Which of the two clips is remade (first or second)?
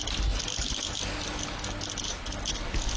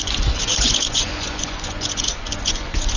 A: second